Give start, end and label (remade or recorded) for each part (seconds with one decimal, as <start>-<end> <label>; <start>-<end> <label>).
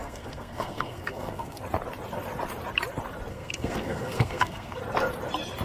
0.0-1.6 remade; 1.6-3.3 recorded; 3.3-4.8 remade; 4.8-5.6 recorded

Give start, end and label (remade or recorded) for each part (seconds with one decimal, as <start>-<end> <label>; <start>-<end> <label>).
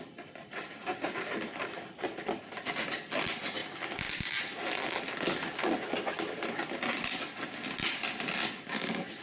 0.0-9.2 recorded